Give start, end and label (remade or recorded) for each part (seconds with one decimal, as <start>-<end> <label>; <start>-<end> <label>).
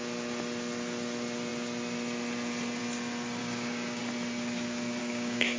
0.0-3.4 recorded; 3.4-4.0 remade; 4.0-5.0 recorded; 5.0-5.6 remade